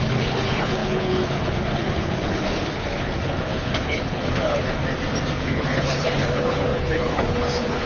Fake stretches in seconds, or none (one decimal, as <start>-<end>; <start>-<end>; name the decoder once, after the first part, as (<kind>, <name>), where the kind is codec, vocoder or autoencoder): 0.0-4.8 (codec, HILCodec); 5.4-7.9